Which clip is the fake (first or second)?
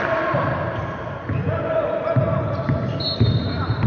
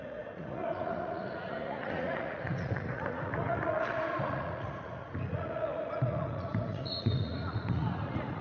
second